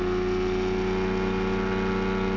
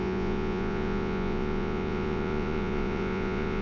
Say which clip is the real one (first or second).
first